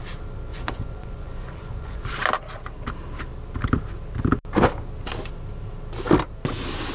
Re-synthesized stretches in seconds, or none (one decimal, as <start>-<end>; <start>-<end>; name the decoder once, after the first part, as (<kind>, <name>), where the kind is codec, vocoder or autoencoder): 0.5-2.0 (vocoder, Vocos)